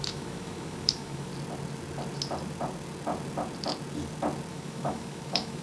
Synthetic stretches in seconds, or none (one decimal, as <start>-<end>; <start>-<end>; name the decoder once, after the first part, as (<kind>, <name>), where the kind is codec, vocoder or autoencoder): 0.0-1.3 (autoencoder, DAC-VAE); 4.5-5.6